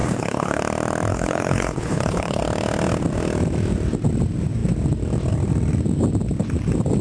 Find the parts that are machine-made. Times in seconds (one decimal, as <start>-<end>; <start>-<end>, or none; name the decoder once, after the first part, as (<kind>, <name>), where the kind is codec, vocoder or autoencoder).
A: 0.0-0.6 (codec, HILCodec); 1.1-2.4